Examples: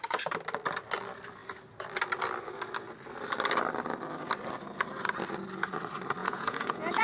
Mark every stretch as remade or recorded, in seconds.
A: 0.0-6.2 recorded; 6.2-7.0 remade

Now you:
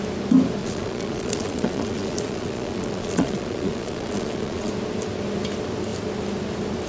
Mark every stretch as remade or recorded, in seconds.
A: 0.0-0.6 recorded; 0.6-4.7 remade; 4.7-6.9 recorded

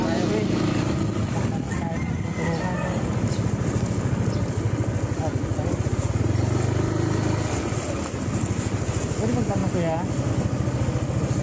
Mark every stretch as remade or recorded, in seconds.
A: 0.0-11.4 recorded

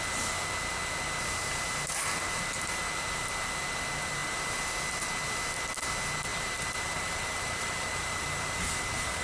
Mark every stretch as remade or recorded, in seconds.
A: 0.0-6.3 recorded; 6.3-9.2 remade

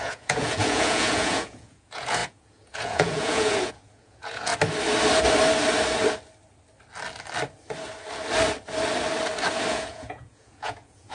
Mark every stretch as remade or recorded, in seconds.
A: 0.0-4.5 remade; 4.5-9.7 recorded; 9.7-11.1 remade

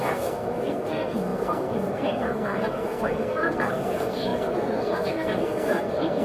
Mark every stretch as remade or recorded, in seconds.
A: 0.0-6.2 remade

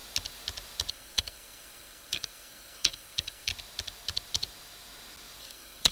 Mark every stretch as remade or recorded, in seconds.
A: 0.0-0.9 recorded; 0.9-3.5 remade; 3.5-5.4 recorded; 5.4-5.9 remade

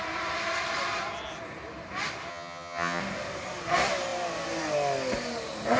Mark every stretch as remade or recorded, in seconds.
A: 0.0-2.3 recorded; 2.3-3.0 remade; 3.0-5.8 recorded